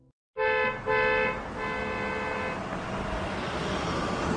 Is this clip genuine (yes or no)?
yes